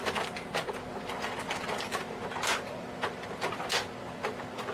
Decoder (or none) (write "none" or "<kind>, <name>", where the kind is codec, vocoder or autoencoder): none